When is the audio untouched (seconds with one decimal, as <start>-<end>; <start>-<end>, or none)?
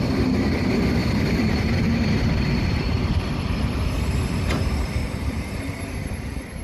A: 0.0-1.0; 3.2-5.0; 5.6-6.6